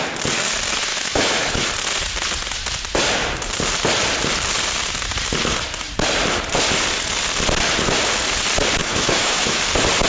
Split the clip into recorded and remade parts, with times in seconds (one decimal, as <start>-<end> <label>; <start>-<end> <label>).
0.0-0.9 recorded; 0.9-1.7 remade; 1.7-8.8 recorded; 8.8-9.6 remade; 9.6-10.1 recorded